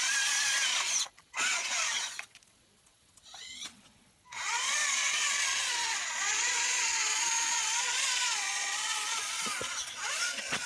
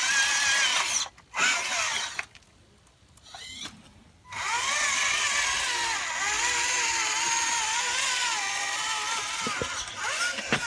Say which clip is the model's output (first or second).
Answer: first